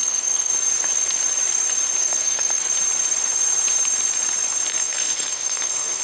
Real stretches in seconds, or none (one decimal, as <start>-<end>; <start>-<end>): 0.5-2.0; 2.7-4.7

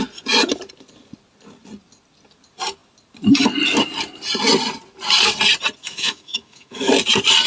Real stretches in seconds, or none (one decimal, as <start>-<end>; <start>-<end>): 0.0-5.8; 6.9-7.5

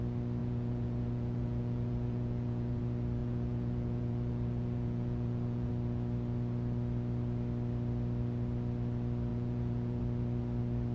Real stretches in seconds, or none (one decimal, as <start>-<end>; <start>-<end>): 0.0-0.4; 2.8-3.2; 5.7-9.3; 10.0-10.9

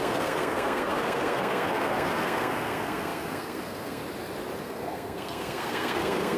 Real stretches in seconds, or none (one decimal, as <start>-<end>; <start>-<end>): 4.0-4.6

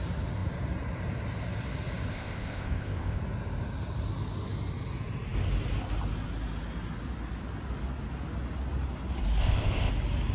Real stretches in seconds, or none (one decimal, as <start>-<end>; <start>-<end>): 0.0-2.1; 3.2-9.4; 9.9-10.3

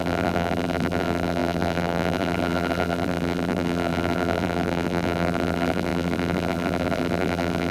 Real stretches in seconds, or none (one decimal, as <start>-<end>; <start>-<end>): none

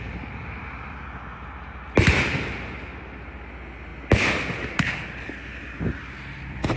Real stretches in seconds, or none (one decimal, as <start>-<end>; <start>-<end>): 0.0-6.8

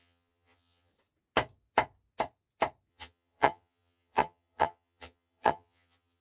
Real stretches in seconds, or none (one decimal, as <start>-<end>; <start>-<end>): 0.9-2.9